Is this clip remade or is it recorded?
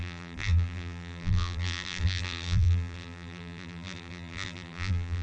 remade